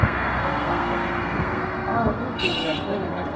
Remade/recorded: remade